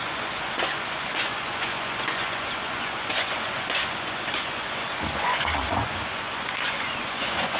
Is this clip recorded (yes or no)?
no